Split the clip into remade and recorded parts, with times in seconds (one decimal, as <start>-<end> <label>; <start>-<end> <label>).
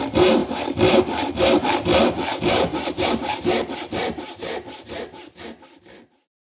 0.0-0.4 recorded; 0.4-1.0 remade; 1.0-2.3 recorded; 2.3-3.5 remade; 3.5-6.6 recorded